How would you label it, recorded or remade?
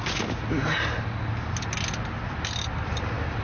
recorded